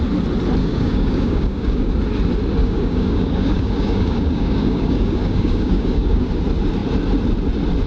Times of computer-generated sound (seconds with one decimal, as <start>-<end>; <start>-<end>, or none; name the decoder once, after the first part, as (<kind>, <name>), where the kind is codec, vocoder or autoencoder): 0.6-1.9 (codec, DAC); 2.6-6.3